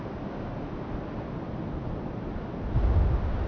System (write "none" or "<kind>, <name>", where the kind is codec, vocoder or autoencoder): none